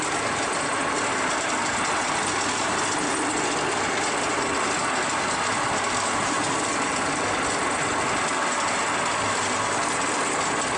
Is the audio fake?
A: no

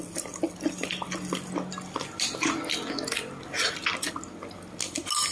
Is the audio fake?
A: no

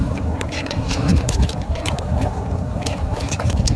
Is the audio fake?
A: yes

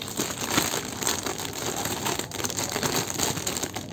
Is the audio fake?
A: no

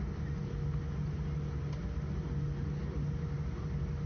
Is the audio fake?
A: no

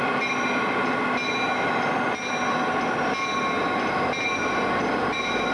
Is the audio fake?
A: no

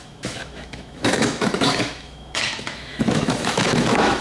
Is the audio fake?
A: yes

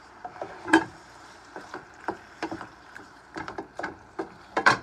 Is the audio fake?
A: yes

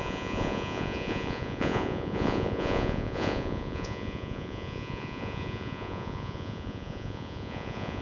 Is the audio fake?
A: yes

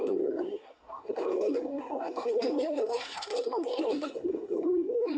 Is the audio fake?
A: yes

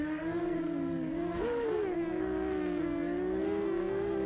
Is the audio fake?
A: yes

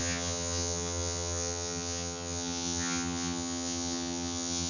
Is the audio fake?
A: yes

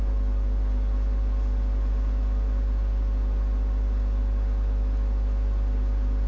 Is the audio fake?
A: no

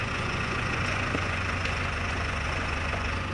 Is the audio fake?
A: yes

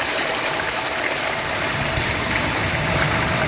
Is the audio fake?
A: yes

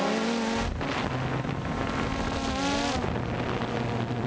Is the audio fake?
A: no